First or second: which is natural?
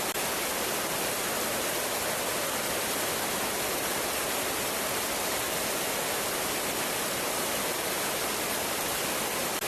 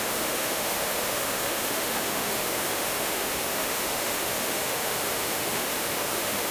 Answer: first